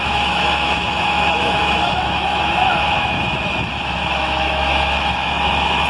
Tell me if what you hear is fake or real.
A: fake